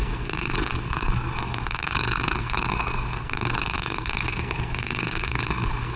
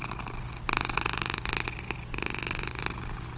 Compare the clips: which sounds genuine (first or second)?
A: second